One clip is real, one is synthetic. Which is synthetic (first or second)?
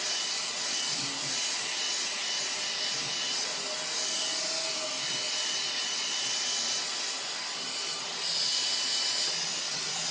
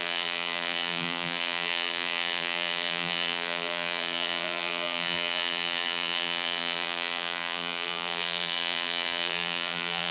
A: second